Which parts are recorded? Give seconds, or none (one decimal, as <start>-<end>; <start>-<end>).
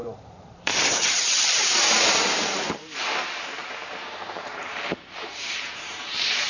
none